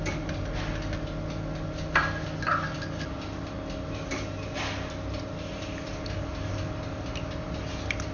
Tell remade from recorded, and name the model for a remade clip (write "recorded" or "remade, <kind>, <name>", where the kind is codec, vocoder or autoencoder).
recorded